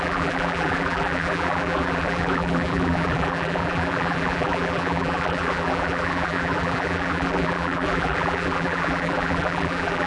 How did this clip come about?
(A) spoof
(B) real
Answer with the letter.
A